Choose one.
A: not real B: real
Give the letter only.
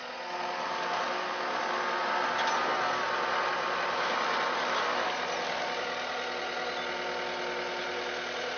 B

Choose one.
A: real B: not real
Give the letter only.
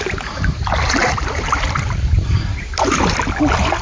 A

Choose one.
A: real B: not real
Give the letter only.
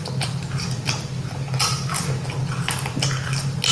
A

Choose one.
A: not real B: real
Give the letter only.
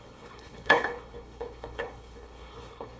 A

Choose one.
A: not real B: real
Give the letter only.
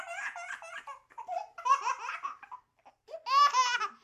B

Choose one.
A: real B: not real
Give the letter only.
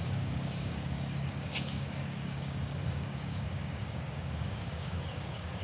B